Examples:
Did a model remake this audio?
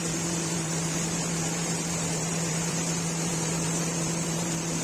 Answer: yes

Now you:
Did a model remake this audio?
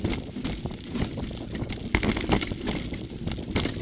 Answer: no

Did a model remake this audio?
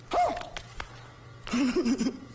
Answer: no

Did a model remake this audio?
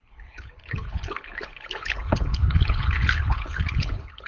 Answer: yes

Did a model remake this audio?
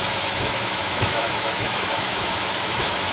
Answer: yes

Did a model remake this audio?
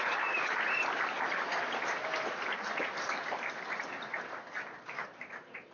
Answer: yes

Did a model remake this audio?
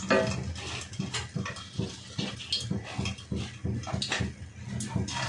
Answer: no